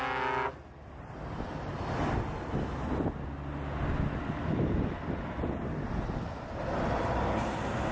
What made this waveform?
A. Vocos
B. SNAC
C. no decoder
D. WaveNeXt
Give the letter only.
C